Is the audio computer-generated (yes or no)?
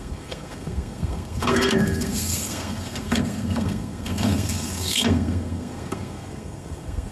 yes